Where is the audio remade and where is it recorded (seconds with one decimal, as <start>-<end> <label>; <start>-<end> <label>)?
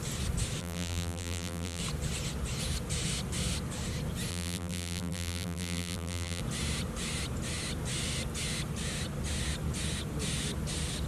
0.0-0.6 recorded; 0.6-1.8 remade; 1.8-4.3 recorded; 4.3-6.4 remade; 6.4-11.1 recorded